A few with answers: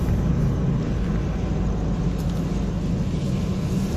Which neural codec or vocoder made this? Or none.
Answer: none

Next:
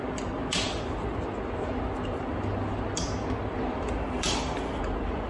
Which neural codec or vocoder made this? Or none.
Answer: none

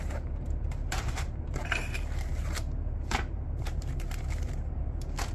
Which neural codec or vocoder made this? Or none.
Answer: vocoder, BigVGAN v2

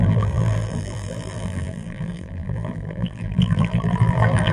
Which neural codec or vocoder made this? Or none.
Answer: vocoder, BigVGAN v2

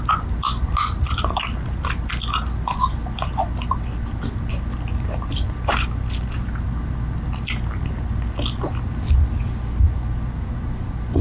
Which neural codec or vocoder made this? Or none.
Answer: none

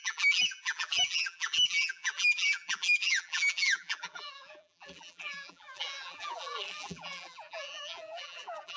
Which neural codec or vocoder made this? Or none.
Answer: vocoder, BigVGAN v2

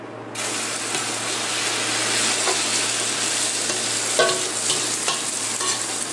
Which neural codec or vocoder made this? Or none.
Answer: none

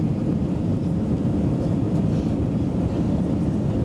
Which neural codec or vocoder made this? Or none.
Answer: vocoder, BigVGAN v2